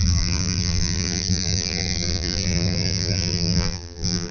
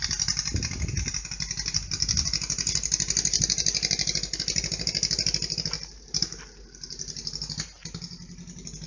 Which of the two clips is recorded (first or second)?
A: second